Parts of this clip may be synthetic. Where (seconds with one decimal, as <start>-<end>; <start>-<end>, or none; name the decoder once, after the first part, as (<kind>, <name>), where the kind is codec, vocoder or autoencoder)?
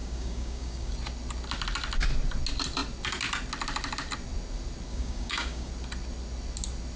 0.0-0.9 (codec, DAC); 4.9-5.7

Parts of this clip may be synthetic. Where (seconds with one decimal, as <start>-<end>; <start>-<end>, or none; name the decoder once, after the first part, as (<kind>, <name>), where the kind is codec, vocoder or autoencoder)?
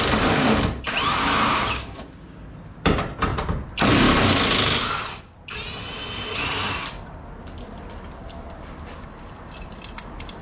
1.2-2.4 (codec, DAC)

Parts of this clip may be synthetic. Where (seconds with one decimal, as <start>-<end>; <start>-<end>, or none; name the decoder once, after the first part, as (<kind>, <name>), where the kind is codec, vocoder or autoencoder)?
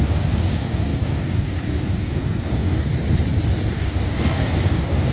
0.0-2.9 (codec, DAC); 3.7-5.1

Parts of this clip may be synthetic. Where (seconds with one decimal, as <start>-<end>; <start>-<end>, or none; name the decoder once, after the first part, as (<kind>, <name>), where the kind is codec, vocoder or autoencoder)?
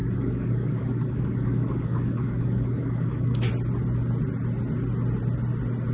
0.0-3.5 (codec, DAC)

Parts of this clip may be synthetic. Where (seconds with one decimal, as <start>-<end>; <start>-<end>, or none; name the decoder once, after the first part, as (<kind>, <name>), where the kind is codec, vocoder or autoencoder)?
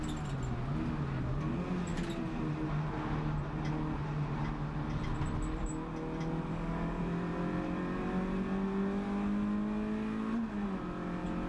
6.5-7.0 (codec, DAC)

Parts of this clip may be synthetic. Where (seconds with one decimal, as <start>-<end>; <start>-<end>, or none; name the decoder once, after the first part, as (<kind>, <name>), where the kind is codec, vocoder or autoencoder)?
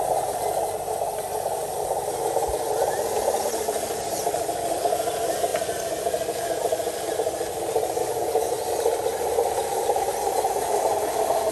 8.0-8.5 (codec, DAC)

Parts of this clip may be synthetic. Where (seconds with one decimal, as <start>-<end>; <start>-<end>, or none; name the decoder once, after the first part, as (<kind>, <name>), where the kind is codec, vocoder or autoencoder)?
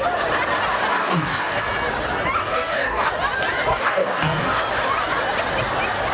0.9-1.6 (codec, DAC); 2.4-3.1; 3.7-4.6